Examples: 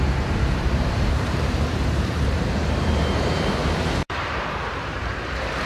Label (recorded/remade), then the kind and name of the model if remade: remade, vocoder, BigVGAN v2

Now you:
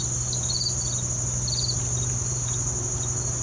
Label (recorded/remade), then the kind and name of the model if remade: recorded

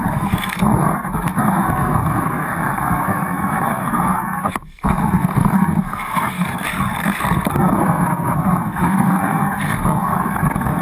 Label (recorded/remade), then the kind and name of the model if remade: remade, codec, SNAC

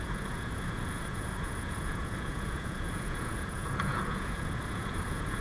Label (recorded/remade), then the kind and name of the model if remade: remade, vocoder, Vocos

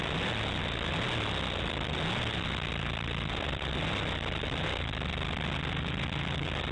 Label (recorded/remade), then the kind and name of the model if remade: recorded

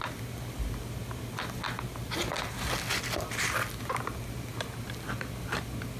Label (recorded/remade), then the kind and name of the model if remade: recorded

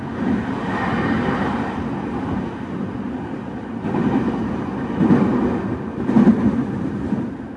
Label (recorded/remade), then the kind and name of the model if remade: recorded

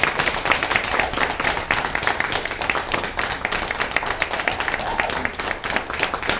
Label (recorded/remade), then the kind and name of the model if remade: recorded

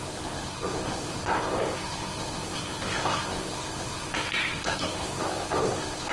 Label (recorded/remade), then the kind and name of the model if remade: remade, codec, SNAC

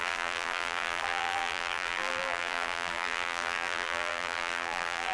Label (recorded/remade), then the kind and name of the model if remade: remade, vocoder, BigVGAN v2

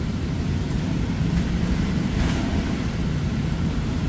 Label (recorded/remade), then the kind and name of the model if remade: remade, vocoder, BigVGAN v2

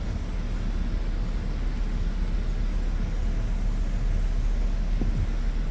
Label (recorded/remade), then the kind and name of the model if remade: recorded